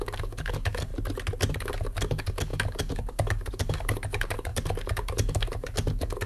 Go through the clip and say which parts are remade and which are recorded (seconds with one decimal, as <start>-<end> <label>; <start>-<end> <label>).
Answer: 0.0-0.9 remade; 0.9-1.5 recorded; 1.5-6.3 remade